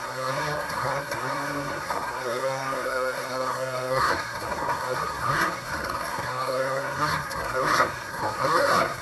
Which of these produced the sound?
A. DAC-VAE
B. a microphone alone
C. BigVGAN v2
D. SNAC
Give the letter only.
D